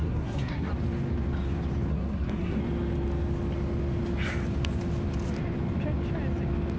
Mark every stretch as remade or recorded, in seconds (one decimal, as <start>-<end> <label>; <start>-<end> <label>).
0.0-0.7 remade; 0.7-1.9 recorded; 1.9-2.6 remade; 2.6-6.8 recorded